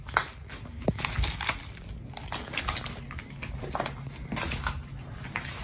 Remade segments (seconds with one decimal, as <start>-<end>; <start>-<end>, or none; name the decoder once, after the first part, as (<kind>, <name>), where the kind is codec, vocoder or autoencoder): none